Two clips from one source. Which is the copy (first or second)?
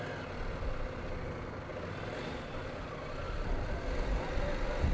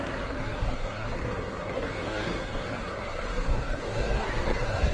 second